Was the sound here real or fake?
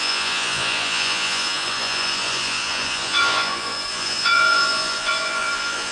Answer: fake